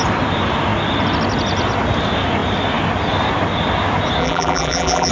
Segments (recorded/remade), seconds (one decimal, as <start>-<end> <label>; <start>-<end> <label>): 0.0-4.2 recorded; 4.2-5.1 remade